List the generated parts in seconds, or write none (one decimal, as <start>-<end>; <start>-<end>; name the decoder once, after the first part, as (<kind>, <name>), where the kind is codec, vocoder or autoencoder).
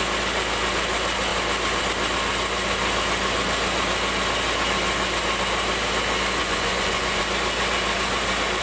6.4-7.2 (vocoder, Vocos)